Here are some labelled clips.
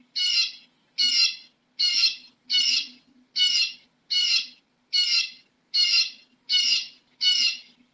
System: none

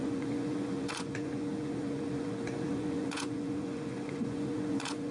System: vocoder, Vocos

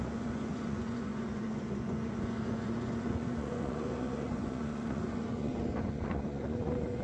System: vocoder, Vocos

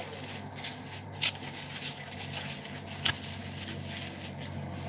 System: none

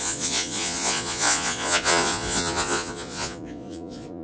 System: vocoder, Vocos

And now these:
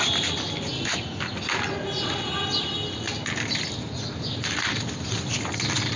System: none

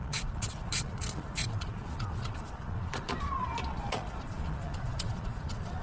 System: vocoder, Vocos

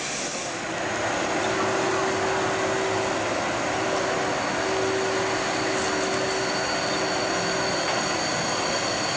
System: none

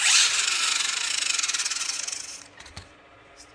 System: vocoder, Vocos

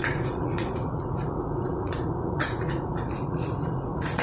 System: vocoder, Vocos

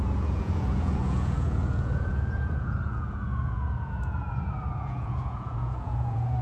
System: vocoder, Vocos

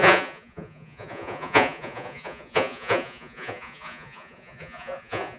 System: vocoder, Vocos